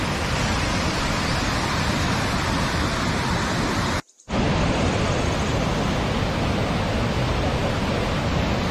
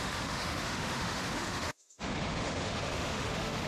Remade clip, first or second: second